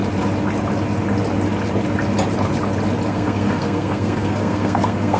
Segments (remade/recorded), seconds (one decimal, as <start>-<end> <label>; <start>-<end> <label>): 0.0-3.1 recorded; 3.1-5.2 remade